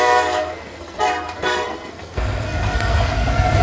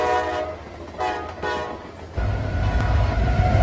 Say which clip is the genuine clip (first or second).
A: second